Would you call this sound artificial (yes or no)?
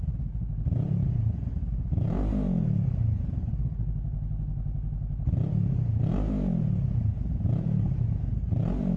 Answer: no